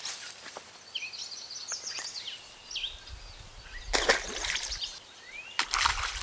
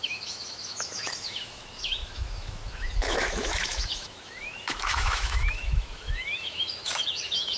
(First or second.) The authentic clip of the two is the first